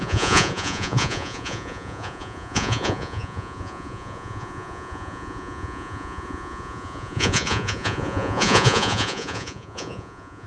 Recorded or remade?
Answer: remade